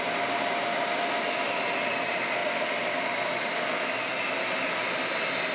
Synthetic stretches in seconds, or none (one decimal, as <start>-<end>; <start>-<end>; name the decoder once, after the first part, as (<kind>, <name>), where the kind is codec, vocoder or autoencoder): none